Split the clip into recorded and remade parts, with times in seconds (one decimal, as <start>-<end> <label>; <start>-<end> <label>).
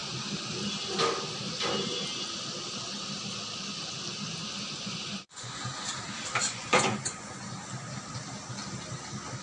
0.0-4.8 recorded; 4.8-5.6 remade; 5.6-6.4 recorded; 6.4-7.6 remade; 7.6-9.4 recorded